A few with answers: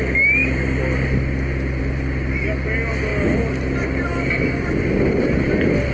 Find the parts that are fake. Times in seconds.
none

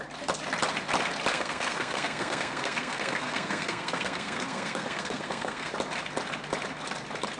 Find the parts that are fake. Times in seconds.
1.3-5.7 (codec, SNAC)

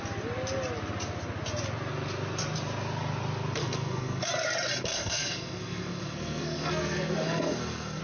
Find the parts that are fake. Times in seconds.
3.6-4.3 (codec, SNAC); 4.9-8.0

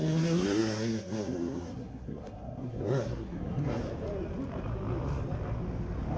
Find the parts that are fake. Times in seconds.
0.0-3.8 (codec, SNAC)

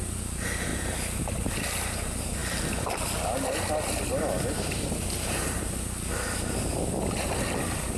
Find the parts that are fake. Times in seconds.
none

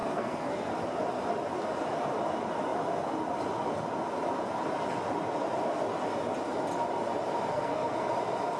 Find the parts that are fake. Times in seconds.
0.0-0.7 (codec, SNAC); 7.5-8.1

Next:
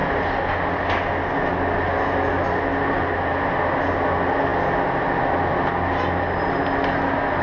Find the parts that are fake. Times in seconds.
none